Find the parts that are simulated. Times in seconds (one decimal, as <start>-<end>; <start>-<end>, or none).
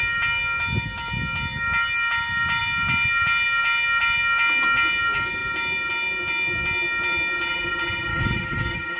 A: 8.1-9.0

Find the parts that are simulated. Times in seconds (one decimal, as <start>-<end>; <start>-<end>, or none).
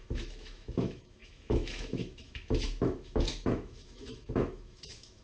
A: 0.0-5.2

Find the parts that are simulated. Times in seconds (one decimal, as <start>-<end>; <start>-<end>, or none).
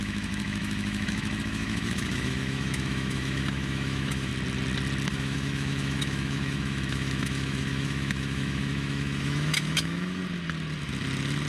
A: 0.0-4.3; 5.1-10.2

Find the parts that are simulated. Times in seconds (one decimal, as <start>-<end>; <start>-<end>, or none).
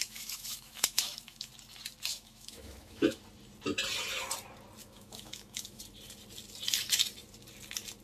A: 0.0-1.5; 2.1-3.2; 4.8-5.8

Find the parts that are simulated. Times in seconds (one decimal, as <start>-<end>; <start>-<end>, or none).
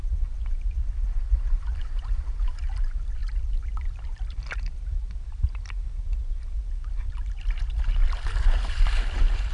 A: none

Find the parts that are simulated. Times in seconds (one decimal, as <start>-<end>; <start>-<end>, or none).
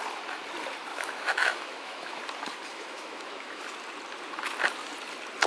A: 0.9-2.2; 2.7-3.6